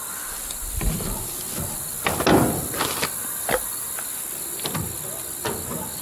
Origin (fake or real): real